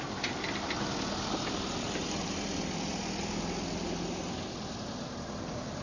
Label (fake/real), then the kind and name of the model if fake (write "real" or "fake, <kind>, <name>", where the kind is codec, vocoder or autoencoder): real